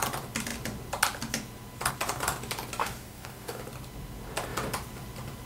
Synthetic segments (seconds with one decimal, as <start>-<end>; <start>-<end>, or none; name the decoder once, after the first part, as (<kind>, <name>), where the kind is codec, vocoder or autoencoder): 2.8-3.6 (codec, DAC)